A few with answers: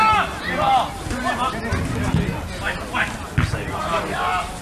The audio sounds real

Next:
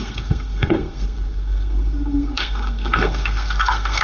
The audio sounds fake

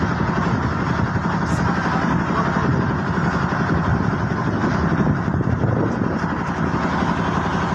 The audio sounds real